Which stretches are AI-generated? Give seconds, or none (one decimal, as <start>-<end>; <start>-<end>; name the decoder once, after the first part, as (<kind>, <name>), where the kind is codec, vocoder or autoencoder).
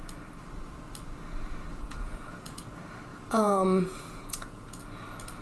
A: 1.7-2.6 (vocoder, Vocos); 3.1-4.8